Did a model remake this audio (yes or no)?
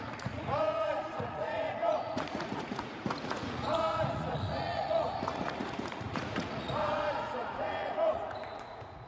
yes